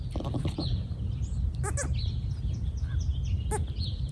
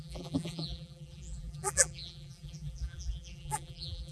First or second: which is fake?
second